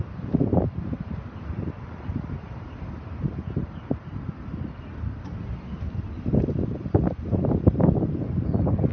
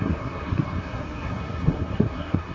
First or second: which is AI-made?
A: second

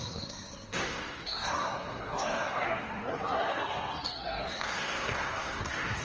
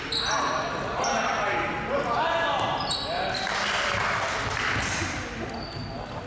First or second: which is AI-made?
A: first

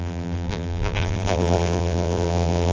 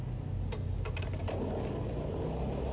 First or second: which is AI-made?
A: first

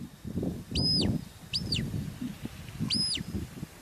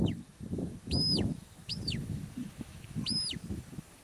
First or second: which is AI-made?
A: second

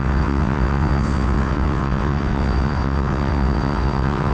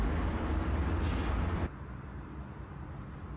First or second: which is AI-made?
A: first